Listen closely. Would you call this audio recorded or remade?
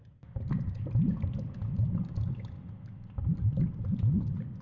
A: recorded